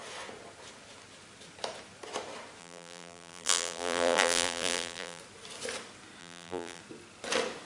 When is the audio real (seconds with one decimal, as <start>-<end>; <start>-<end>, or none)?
0.0-2.6; 5.2-6.2; 6.8-7.6